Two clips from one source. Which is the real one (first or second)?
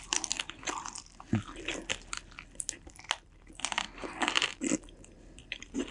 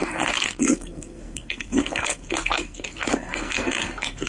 first